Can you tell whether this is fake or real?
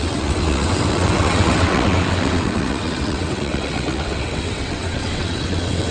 fake